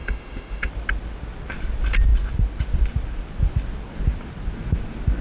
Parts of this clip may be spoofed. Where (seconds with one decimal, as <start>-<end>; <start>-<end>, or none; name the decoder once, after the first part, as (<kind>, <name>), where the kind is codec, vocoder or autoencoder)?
0.0-0.7 (autoencoder, DAC-VAE)